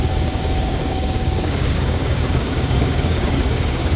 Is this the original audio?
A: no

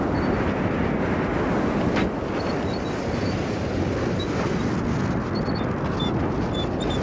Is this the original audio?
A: yes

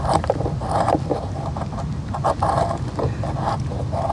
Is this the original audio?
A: yes